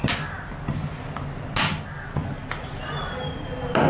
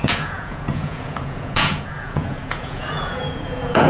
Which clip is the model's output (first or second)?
second